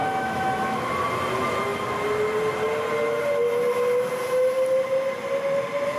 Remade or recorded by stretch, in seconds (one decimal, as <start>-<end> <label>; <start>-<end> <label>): 0.0-0.9 remade; 0.9-6.0 recorded